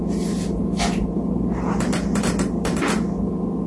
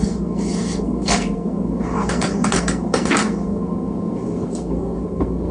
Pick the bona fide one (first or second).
first